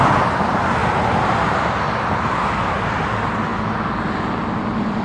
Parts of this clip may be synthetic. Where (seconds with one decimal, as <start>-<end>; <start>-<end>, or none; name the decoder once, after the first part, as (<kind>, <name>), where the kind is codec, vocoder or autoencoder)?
none